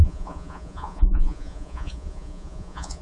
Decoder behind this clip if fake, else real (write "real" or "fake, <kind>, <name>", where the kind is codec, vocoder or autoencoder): fake, vocoder, Vocos